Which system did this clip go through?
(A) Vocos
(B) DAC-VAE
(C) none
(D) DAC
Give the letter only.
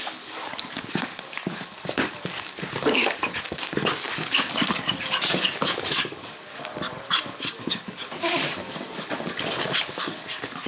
D